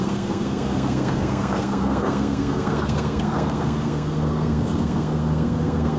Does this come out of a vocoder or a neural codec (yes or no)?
yes